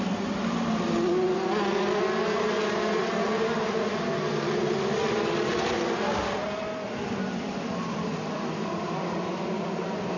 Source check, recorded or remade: recorded